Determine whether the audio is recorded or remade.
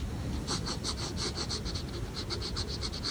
recorded